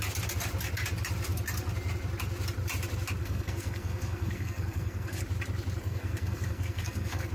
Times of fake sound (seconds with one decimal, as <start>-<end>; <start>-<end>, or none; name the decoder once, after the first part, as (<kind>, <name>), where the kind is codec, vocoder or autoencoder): 3.2-5.2 (codec, SNAC); 5.8-7.3